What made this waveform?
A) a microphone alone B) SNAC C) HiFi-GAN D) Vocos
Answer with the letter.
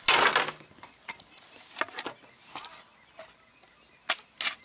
A